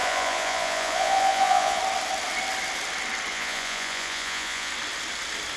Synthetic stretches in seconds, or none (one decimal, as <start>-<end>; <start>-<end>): 0.0-1.8; 3.3-4.7